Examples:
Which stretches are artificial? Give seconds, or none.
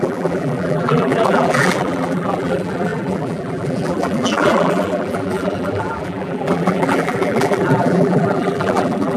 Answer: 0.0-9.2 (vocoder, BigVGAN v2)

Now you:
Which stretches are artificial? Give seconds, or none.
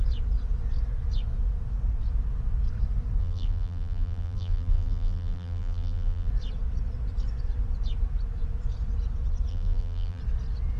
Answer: 3.2-6.3 (vocoder, BigVGAN v2); 9.5-10.2